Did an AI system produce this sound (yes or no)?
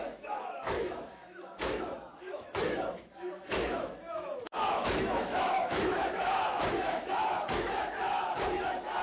yes